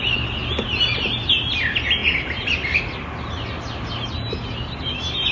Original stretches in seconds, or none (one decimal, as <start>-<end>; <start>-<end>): 0.0-5.3